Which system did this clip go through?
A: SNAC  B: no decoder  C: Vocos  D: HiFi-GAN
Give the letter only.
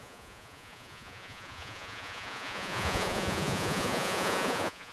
C